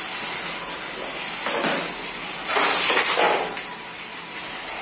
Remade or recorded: recorded